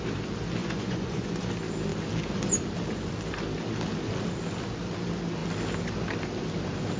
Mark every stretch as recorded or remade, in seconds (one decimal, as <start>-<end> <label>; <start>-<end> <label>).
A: 0.0-0.6 recorded; 0.6-1.5 remade; 1.5-7.0 recorded